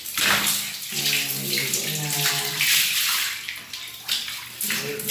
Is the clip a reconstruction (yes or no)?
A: no